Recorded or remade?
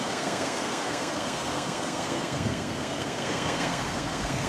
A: remade